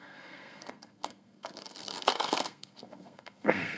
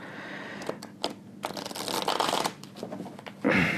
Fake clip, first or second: first